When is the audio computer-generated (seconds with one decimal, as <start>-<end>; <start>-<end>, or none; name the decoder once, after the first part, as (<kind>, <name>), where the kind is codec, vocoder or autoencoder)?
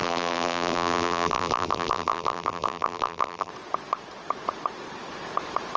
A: 0.0-3.5 (vocoder, BigVGAN v2)